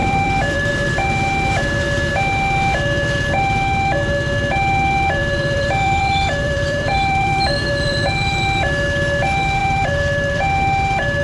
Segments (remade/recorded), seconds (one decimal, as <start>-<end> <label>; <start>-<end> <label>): 0.0-0.7 remade; 0.7-5.2 recorded; 5.2-8.4 remade; 8.4-9.6 recorded; 9.6-10.4 remade; 10.4-11.2 recorded